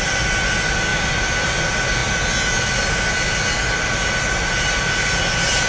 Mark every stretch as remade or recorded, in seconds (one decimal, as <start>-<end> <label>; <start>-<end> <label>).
0.0-0.9 recorded; 0.9-1.6 remade; 1.6-5.7 recorded